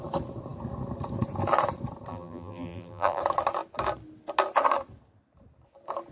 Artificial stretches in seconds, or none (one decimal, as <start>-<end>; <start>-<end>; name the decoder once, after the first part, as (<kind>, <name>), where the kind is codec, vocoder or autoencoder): 2.1-3.2 (vocoder, BigVGAN v2)